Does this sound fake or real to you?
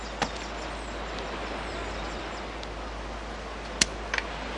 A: real